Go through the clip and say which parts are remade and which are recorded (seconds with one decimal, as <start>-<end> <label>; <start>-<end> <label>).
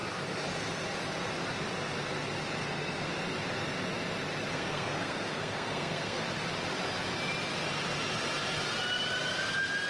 0.0-2.6 recorded; 2.6-3.1 remade; 3.1-4.5 recorded; 4.5-6.2 remade; 6.2-9.9 recorded